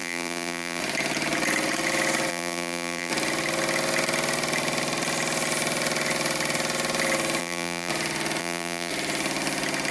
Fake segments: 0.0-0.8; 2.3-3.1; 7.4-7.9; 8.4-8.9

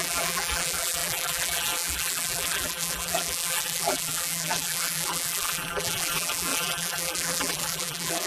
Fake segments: 0.0-8.3